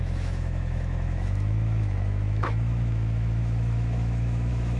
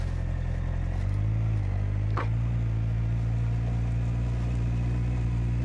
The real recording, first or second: second